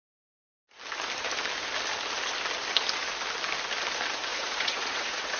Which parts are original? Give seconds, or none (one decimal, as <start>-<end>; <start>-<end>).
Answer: 0.0-4.3